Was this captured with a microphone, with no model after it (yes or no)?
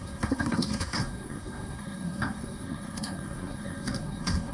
no